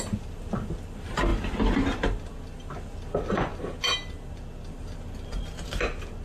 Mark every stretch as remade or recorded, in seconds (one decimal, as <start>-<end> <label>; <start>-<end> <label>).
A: 0.0-6.2 recorded